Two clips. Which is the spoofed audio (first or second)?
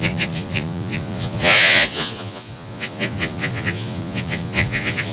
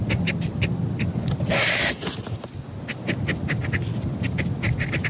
first